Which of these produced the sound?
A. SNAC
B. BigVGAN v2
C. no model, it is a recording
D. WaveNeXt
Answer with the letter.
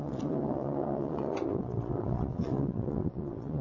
D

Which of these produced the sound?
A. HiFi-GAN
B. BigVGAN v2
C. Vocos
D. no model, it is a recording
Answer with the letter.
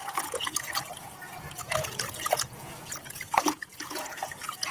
C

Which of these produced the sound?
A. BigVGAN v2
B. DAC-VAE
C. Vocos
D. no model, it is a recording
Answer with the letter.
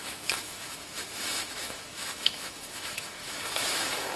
B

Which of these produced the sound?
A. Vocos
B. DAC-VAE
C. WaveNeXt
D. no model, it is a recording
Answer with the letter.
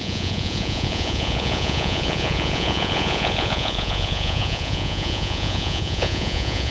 A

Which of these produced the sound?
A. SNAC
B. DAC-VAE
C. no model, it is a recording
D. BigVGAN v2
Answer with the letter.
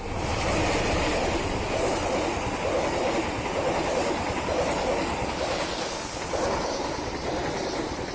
C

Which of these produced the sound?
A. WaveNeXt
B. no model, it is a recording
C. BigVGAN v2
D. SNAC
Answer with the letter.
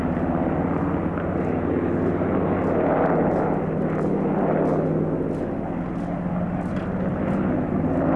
B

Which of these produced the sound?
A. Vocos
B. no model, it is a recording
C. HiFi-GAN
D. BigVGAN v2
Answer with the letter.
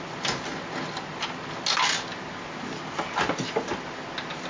B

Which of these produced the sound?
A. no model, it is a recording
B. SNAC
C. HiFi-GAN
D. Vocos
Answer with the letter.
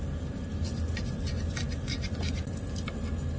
A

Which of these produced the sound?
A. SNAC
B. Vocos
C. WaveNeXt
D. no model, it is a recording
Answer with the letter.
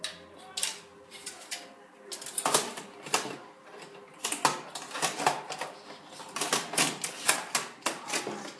D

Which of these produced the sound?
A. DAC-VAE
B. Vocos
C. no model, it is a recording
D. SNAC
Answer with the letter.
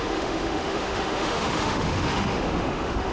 A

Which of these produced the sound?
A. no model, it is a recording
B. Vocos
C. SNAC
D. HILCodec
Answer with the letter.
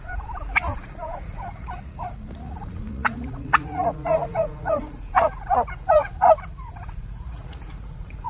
B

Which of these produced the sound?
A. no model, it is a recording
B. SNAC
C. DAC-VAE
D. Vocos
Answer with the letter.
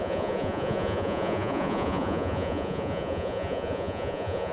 D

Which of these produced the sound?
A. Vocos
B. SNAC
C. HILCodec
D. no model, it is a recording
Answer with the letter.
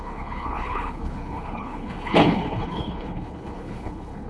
C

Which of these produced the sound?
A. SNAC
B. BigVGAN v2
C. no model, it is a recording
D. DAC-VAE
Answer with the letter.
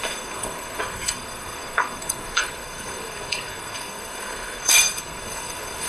A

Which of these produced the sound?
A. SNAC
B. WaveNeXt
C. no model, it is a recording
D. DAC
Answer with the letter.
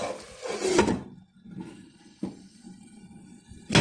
C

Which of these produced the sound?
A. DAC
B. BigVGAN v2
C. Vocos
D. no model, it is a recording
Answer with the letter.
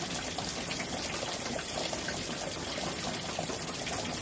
D